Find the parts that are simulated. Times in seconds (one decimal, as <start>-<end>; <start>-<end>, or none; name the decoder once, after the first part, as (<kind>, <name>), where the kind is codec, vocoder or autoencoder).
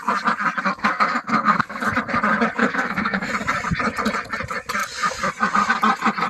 0.8-1.8 (codec, SNAC); 2.6-3.3